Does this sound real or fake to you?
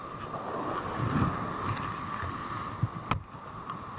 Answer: real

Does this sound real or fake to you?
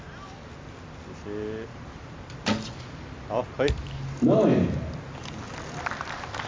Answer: real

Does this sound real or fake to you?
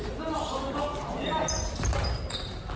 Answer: real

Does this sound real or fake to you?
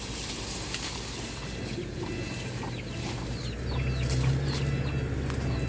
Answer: real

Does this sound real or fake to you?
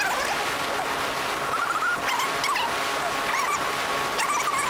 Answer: real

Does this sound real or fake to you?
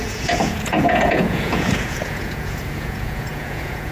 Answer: fake